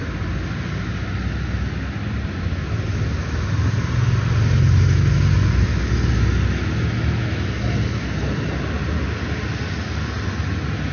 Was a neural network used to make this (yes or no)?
no